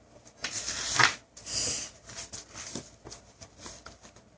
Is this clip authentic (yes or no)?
yes